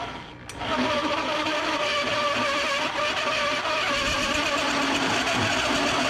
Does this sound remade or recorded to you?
recorded